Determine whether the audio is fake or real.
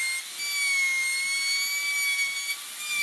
real